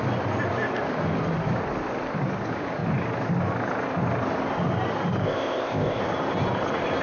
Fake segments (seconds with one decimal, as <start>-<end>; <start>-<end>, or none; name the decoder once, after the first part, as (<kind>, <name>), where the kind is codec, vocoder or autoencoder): 5.2-6.0 (codec, ZipCodec)